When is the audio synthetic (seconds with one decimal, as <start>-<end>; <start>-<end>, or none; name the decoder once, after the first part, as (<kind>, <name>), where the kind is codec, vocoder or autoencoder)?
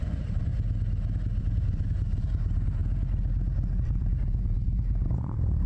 0.0-0.5 (vocoder, BigVGAN v2); 1.4-2.8; 3.7-5.7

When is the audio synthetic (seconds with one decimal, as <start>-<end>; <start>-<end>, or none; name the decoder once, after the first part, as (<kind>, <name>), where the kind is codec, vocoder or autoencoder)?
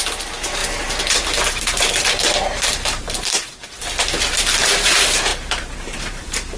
0.0-0.6 (vocoder, BigVGAN v2); 1.3-3.8; 4.3-6.6